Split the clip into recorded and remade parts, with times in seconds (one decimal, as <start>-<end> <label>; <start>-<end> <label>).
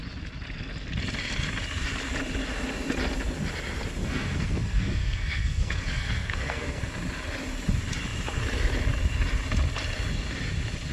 0.0-4.0 recorded; 4.0-6.8 remade; 6.8-10.9 recorded